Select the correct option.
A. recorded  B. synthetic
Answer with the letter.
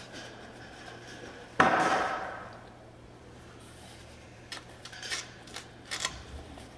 B